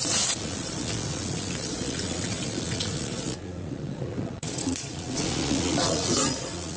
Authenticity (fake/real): fake